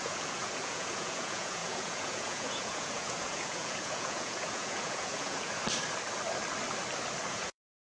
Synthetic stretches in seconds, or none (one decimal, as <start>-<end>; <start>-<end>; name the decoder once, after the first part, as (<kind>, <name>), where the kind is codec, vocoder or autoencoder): 0.0-5.6 (vocoder, Vocos); 7.3-7.8